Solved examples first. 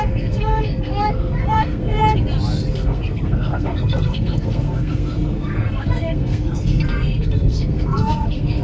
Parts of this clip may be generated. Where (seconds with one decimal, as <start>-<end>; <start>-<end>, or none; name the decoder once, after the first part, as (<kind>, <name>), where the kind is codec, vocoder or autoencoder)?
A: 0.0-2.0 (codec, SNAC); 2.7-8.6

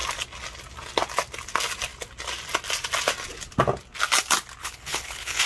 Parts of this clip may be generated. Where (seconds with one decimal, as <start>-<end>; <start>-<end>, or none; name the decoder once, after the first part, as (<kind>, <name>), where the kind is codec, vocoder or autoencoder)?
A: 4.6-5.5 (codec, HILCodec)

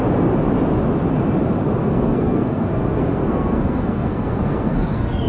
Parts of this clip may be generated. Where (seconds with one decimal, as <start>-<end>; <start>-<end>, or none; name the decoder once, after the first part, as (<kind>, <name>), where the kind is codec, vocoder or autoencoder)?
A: 1.8-5.3 (codec, SNAC)

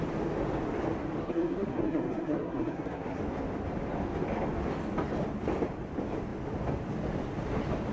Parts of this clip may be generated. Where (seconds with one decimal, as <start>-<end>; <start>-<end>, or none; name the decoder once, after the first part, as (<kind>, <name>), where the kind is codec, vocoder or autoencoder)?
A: 1.2-3.2 (codec, SNAC)

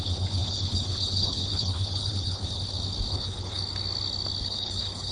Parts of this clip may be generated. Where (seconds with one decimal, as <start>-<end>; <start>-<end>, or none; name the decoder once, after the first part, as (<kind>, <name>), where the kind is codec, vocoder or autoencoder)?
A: 0.0-2.5 (codec, HILCodec); 3.1-3.6; 4.4-5.1